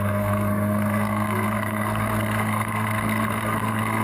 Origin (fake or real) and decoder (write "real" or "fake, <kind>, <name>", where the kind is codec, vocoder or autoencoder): fake, codec, SNAC